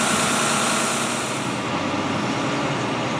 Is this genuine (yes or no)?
yes